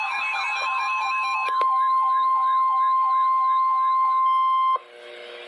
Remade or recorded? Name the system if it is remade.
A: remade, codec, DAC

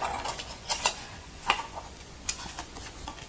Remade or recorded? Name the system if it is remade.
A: remade, vocoder, Vocos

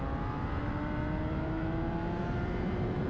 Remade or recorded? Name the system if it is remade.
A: remade, vocoder, BigVGAN v2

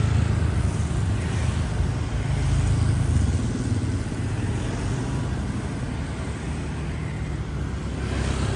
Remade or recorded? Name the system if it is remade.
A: recorded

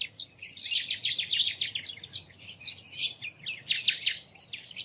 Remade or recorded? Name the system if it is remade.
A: recorded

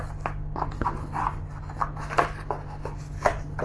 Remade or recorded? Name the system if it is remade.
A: recorded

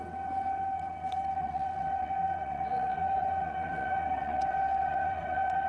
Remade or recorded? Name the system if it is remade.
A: remade, vocoder, WaveNeXt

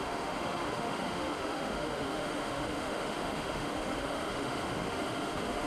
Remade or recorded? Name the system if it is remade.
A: remade, autoencoder, DAC-VAE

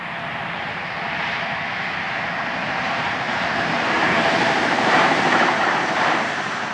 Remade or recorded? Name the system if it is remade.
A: remade, vocoder, BigVGAN v2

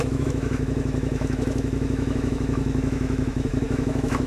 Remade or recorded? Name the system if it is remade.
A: remade, autoencoder, DAC-VAE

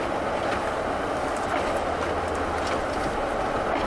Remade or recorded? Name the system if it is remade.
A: recorded